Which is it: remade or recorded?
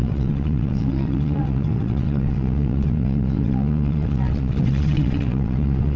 remade